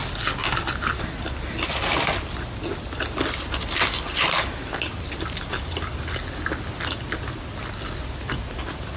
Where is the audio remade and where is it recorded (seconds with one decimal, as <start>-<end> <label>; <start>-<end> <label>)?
0.0-9.0 recorded